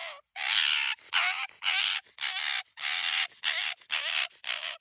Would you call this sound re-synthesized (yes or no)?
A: no